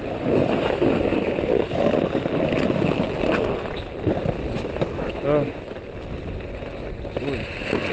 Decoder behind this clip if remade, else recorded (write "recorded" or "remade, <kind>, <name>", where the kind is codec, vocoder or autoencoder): recorded